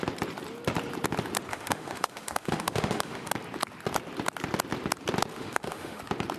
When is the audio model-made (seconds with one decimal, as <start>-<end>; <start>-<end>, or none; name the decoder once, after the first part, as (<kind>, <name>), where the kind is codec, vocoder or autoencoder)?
1.5-3.3 (autoencoder, DAC-VAE); 5.3-6.0